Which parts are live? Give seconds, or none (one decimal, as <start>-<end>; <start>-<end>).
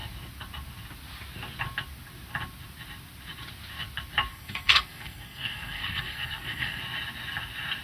0.0-4.3; 6.8-7.8